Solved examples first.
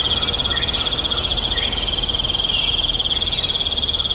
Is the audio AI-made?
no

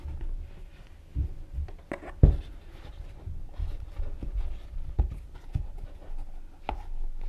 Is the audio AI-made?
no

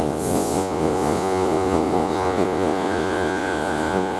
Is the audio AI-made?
yes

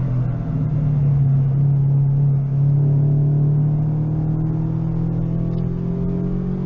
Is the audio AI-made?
no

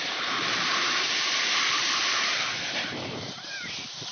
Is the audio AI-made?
yes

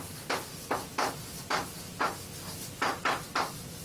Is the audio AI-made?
no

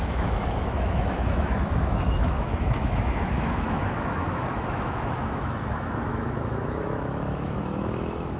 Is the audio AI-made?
yes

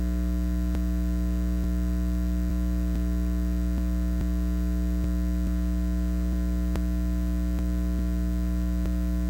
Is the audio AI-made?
no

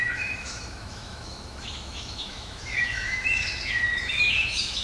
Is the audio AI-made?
yes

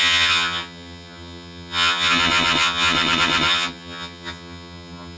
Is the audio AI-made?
yes